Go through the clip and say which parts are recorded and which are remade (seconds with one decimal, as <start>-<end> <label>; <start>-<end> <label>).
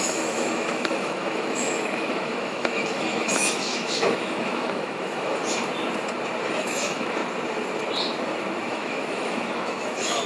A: 0.0-5.4 remade; 5.4-6.6 recorded; 6.6-7.2 remade; 7.2-8.7 recorded; 8.7-10.3 remade